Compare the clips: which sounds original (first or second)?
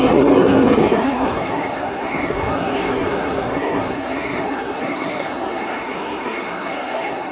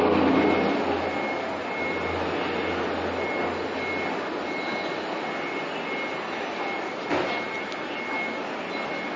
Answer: second